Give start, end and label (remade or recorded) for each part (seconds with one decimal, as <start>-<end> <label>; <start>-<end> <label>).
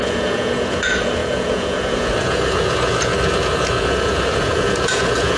0.0-5.4 remade